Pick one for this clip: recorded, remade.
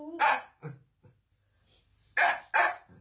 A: recorded